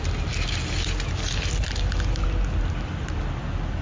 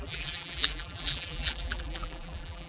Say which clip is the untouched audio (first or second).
first